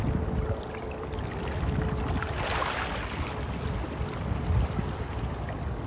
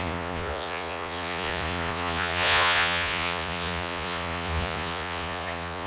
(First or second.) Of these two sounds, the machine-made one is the second